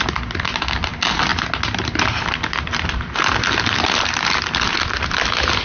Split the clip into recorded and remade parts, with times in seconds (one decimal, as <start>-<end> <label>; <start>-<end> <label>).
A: 0.0-5.6 recorded